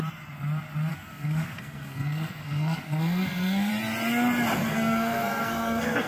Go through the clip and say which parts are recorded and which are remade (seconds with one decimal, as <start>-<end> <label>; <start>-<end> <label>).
0.0-0.9 recorded; 0.9-3.7 remade; 3.7-4.7 recorded; 4.7-6.1 remade